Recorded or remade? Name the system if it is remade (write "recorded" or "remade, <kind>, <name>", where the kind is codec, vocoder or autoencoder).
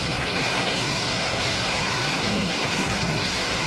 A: remade, codec, SNAC